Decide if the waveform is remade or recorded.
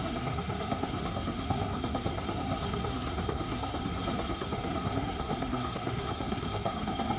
remade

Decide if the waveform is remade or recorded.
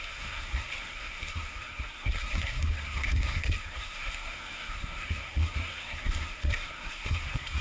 remade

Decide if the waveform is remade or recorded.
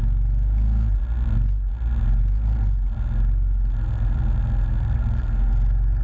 recorded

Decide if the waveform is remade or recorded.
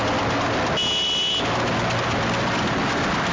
recorded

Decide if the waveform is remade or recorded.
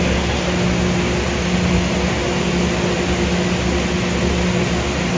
recorded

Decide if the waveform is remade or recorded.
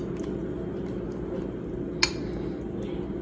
recorded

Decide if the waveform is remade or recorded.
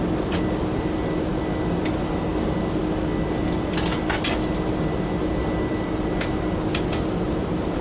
recorded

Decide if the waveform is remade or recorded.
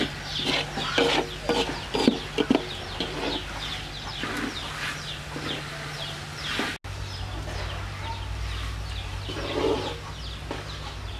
recorded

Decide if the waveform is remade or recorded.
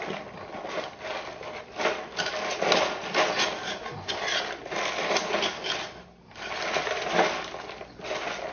recorded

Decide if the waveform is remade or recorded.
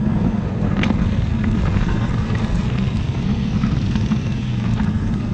remade